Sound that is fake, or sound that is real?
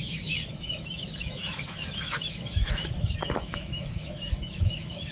fake